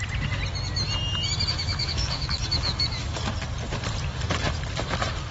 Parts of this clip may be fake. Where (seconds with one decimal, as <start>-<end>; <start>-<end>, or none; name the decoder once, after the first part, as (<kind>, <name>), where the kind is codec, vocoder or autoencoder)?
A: 1.5-3.3 (autoencoder, DAC-VAE)